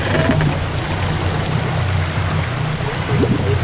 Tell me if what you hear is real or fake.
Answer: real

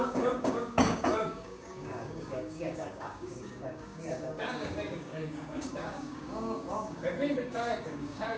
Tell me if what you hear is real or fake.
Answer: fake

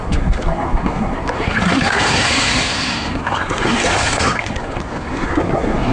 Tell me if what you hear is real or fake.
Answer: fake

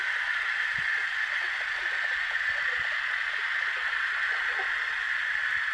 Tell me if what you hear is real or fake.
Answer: real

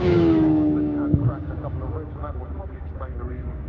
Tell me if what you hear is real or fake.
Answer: fake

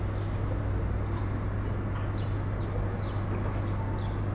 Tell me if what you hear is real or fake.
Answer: real